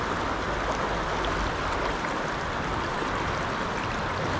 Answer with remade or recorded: recorded